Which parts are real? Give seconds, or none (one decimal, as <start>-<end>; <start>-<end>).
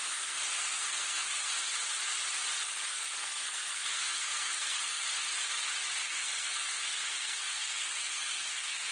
1.5-2.9; 5.1-6.0